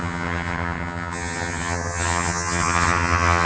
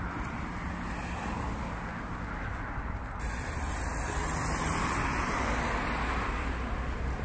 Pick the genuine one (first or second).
second